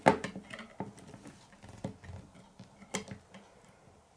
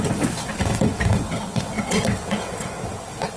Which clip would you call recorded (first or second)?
first